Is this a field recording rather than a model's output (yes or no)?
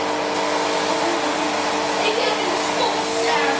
yes